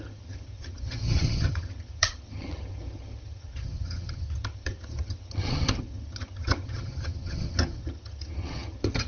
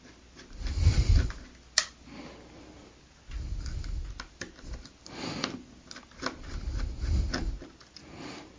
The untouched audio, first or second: second